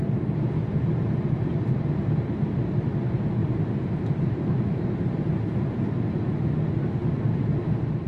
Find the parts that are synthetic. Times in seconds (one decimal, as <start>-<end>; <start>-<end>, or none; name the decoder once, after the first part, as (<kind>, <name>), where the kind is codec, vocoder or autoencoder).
3.4-5.6 (vocoder, BigVGAN v2)